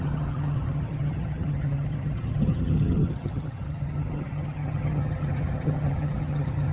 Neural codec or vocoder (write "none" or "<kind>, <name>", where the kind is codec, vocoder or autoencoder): vocoder, HiFi-GAN